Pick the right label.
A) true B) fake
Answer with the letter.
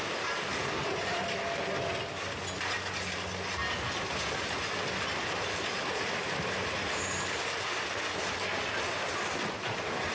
A